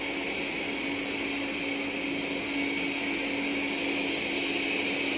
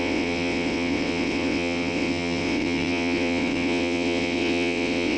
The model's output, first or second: second